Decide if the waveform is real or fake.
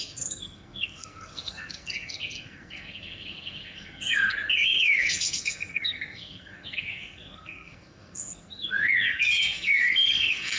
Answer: fake